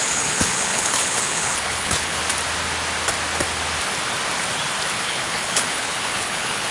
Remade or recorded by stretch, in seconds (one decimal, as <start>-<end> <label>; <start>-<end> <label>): 0.0-2.2 remade; 2.2-5.0 recorded; 5.0-6.7 remade